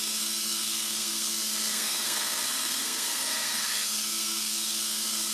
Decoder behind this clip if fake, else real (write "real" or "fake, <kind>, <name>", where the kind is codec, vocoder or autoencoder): fake, codec, SNAC